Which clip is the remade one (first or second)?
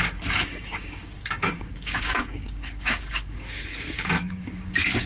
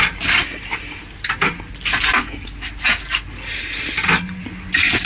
first